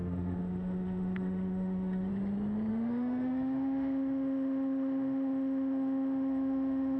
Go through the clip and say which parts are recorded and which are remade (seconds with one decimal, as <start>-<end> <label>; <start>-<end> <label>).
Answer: 0.0-2.1 remade; 2.1-2.7 recorded; 2.7-7.0 remade